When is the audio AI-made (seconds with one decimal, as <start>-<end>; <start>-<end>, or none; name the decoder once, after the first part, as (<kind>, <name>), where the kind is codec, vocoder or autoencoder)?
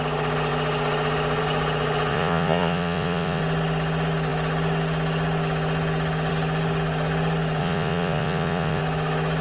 2.1-3.4 (vocoder, Vocos); 7.6-8.8